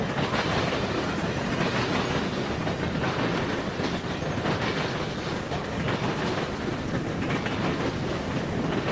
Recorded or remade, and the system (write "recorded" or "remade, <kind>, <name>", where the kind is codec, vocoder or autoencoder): recorded